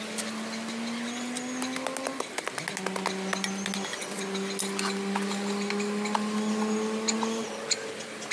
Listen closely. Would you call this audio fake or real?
real